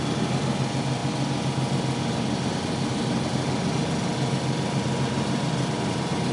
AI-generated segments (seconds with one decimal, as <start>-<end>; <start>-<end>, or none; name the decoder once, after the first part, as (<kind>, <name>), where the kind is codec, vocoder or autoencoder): none